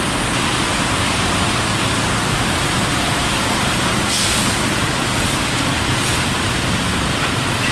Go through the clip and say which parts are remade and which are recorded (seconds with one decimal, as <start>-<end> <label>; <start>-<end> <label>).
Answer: 0.0-0.7 recorded; 0.7-1.9 remade; 1.9-7.7 recorded